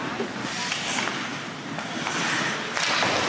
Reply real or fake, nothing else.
real